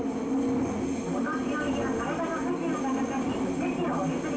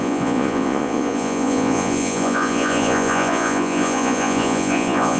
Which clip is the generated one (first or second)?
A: second